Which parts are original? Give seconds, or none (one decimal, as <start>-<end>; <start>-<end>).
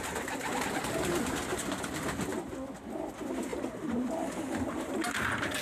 0.0-5.6